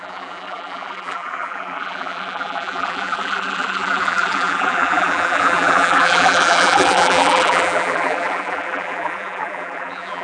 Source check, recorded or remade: remade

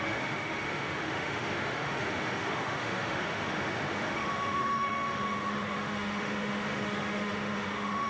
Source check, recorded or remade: remade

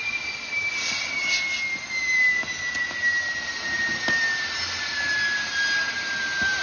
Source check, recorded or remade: recorded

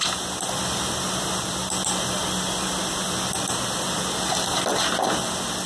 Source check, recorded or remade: recorded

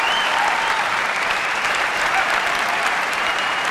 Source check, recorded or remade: remade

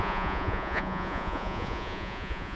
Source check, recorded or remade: remade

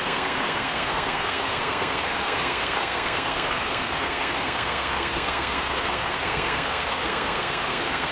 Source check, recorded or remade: remade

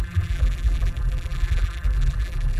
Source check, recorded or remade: remade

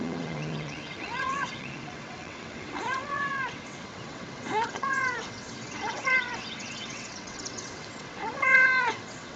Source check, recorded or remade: remade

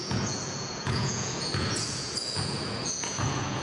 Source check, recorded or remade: remade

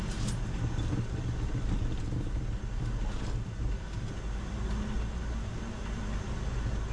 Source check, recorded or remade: recorded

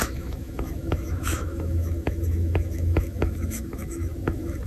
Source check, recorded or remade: remade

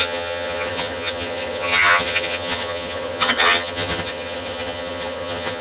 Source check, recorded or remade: remade